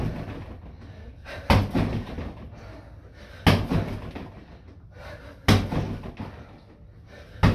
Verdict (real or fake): real